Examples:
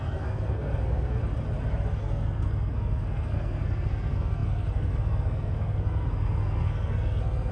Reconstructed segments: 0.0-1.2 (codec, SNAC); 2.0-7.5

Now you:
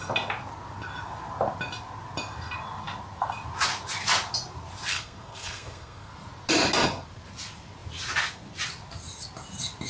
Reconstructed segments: 4.9-6.1 (codec, SNAC)